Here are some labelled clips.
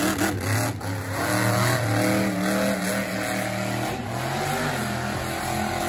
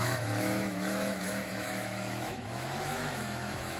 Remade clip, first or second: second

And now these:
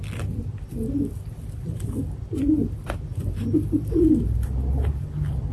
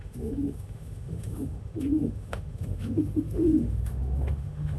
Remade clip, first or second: second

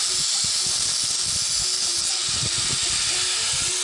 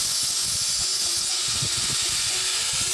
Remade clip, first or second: second